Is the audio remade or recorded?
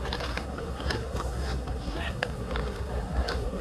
remade